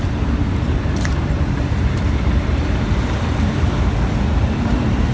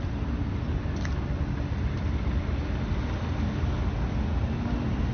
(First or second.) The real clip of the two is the second